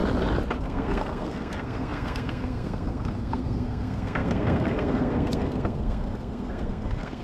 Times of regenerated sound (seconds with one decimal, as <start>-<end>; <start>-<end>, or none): 0.6-7.2